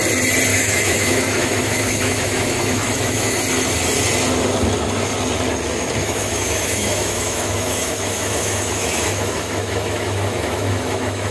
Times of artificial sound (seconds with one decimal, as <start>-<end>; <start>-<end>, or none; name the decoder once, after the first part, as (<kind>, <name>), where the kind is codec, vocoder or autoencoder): 0.5-3.4 (autoencoder, DAC-VAE); 6.0-11.3